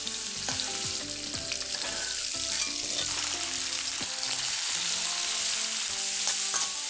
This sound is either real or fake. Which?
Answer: real